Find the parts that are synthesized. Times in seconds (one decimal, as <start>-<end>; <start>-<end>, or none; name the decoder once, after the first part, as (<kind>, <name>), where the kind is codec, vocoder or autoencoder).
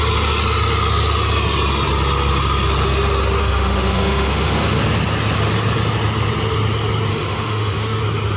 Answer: 3.4-4.8 (autoencoder, DAC-VAE); 7.1-8.0